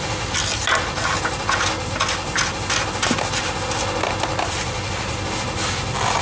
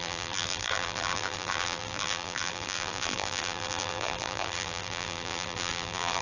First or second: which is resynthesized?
second